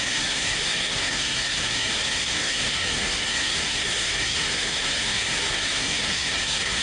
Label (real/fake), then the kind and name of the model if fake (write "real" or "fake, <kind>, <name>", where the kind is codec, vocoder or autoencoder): fake, codec, SNAC